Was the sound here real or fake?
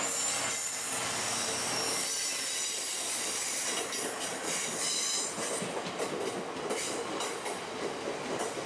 real